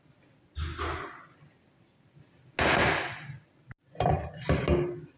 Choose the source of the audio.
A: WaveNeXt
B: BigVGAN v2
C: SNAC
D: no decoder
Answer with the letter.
D